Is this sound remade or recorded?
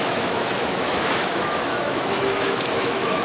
remade